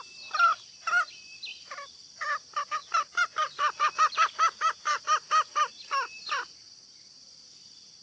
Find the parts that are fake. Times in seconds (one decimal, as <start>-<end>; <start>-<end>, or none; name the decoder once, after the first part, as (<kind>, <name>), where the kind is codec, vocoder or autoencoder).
2.8-5.0 (vocoder, BigVGAN v2)